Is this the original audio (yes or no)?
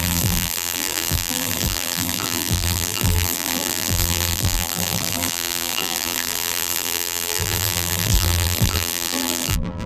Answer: no